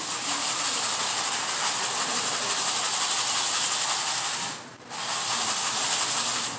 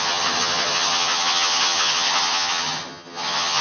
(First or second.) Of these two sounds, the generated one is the second